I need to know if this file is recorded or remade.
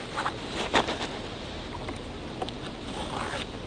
recorded